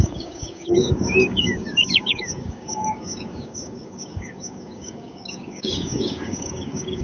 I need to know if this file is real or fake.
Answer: fake